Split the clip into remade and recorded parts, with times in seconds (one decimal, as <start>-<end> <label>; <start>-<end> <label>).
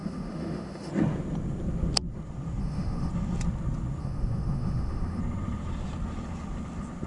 0.0-0.9 remade; 0.9-2.6 recorded; 2.6-3.1 remade; 3.1-4.0 recorded; 4.0-5.2 remade; 5.2-7.1 recorded